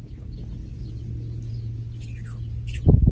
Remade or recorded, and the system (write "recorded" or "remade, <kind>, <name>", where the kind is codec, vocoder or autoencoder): recorded